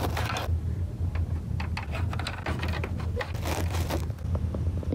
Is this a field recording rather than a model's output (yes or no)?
yes